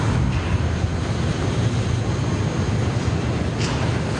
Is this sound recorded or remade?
recorded